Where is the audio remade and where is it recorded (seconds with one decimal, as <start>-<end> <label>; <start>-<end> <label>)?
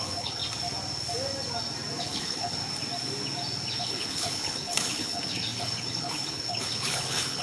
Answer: 0.0-0.4 remade; 0.4-2.0 recorded; 2.0-2.6 remade; 2.6-3.8 recorded; 3.8-7.4 remade